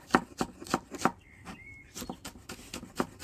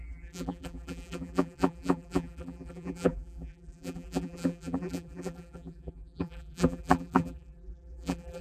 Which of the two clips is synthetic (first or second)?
second